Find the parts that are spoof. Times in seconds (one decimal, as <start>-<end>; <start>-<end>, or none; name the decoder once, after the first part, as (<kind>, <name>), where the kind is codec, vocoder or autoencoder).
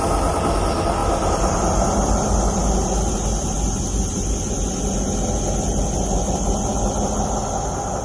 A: none